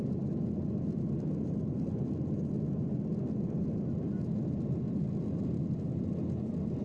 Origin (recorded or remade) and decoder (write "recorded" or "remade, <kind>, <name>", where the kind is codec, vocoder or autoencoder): recorded